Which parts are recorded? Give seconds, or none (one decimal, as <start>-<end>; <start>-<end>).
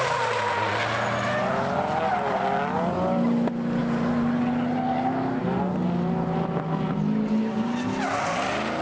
0.0-8.8